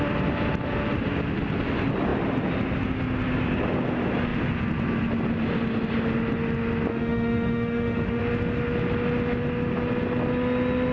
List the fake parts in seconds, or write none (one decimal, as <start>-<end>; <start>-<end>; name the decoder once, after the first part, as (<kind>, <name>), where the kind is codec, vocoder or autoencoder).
6.9-8.2 (autoencoder, DAC-VAE)